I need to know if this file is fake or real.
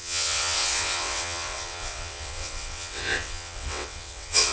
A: fake